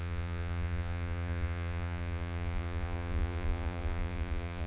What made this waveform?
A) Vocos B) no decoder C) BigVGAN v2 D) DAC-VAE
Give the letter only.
A